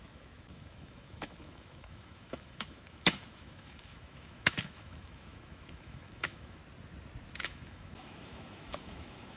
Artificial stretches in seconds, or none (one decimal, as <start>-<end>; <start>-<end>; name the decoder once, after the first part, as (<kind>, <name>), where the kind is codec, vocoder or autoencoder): 0.0-6.6 (autoencoder, DAC-VAE); 7.3-9.4